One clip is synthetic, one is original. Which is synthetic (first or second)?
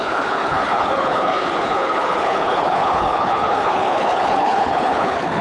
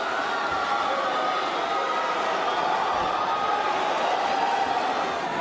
first